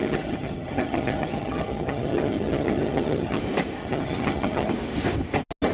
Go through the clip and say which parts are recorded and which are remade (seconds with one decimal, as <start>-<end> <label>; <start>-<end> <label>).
0.0-3.4 remade; 3.4-3.8 recorded; 3.8-4.7 remade; 4.7-5.7 recorded